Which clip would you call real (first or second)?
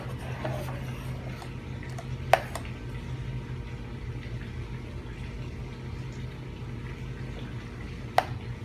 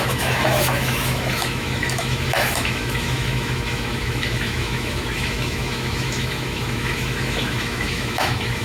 first